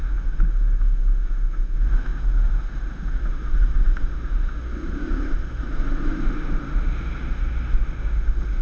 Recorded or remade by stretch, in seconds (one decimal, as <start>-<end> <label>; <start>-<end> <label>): 0.0-8.6 remade